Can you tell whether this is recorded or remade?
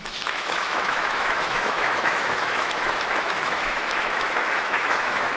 remade